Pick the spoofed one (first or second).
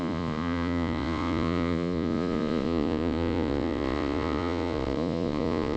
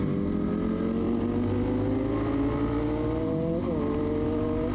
first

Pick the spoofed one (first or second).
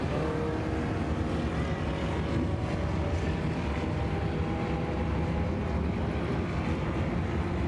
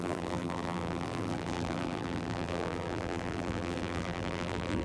second